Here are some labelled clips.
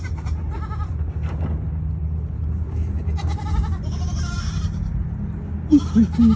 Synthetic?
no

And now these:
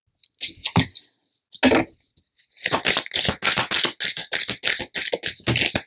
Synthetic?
no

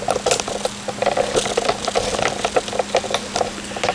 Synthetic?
no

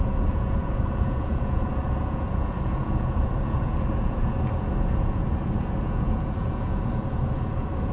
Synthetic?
yes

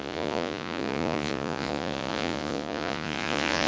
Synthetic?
yes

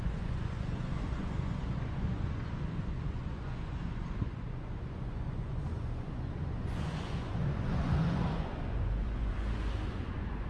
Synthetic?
yes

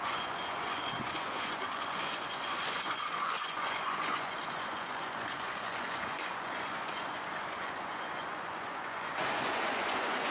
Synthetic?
yes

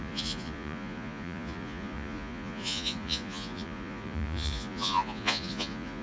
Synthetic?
yes